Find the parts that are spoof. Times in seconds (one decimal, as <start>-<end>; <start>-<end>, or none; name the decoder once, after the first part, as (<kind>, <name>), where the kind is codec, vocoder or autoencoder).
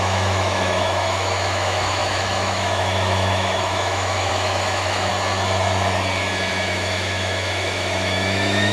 0.0-5.1 (autoencoder, DAC-VAE); 6.5-8.7